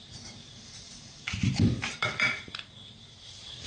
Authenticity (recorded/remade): remade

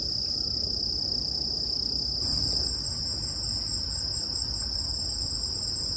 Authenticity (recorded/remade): recorded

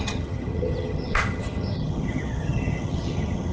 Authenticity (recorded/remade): remade